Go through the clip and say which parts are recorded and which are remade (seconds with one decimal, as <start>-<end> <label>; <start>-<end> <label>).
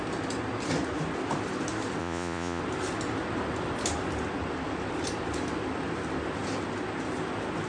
0.0-2.0 recorded; 2.0-2.6 remade; 2.6-7.7 recorded